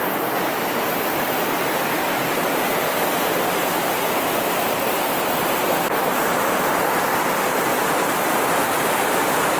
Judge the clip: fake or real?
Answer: real